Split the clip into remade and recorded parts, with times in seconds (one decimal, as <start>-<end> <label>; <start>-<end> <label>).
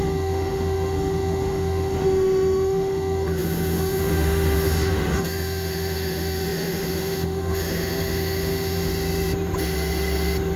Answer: 0.0-8.9 remade; 8.9-10.6 recorded